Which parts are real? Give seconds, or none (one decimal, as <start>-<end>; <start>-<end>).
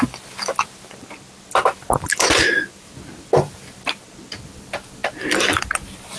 0.0-6.2